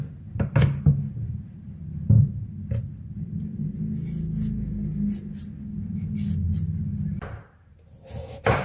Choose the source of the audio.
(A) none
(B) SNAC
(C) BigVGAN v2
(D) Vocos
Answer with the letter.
A